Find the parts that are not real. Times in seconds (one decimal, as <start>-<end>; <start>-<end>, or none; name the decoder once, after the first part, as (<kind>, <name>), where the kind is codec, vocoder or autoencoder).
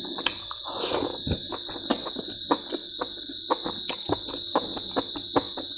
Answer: none